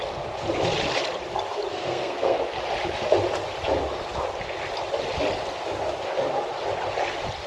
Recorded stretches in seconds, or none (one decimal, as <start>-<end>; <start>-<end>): 0.0-1.7; 2.4-7.5